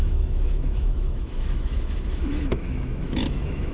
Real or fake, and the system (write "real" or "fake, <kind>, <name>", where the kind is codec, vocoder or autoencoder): fake, autoencoder, DAC-VAE